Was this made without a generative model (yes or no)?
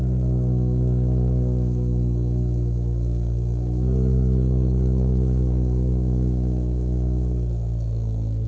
no